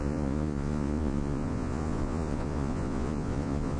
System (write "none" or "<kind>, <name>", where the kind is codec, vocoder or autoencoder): vocoder, Vocos